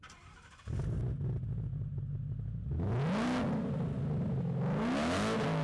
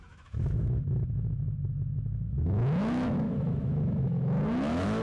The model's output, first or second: second